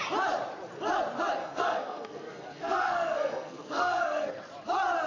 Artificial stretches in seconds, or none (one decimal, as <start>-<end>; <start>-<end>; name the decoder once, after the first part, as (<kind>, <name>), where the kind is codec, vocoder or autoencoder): 1.4-4.3 (codec, SNAC)